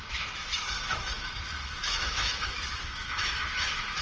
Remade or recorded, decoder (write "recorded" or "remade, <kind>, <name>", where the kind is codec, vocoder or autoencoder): remade, autoencoder, DAC-VAE